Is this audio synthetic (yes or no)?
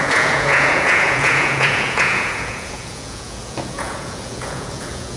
yes